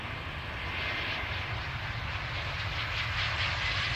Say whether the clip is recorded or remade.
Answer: recorded